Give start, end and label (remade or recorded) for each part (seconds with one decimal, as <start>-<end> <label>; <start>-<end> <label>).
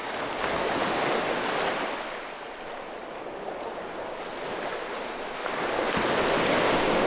0.0-7.1 recorded